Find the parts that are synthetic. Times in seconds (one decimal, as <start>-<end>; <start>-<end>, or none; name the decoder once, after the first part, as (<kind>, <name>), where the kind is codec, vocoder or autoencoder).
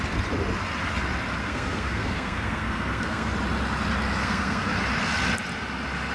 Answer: 1.4-3.3 (codec, SNAC); 4.2-4.7